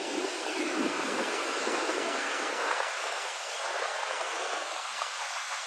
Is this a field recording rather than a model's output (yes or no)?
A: no